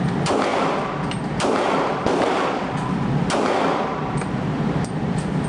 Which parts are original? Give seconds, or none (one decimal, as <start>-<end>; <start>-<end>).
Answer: none